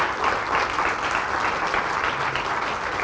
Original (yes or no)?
yes